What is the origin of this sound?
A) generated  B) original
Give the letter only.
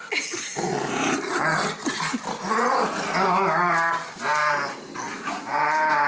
B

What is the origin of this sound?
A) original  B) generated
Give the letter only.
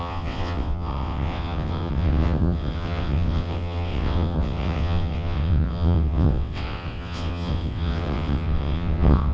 B